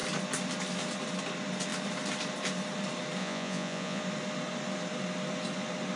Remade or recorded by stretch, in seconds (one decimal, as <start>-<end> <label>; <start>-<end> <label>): 0.0-3.2 recorded; 3.2-4.0 remade; 4.0-6.0 recorded